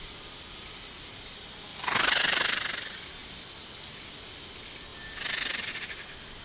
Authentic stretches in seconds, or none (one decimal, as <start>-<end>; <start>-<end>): 0.0-1.7; 2.7-6.4

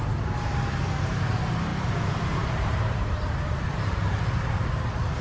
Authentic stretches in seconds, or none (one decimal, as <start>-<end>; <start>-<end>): 0.0-1.7; 4.7-5.2